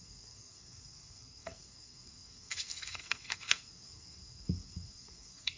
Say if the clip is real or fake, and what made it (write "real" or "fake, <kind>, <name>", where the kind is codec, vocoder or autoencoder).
fake, codec, SNAC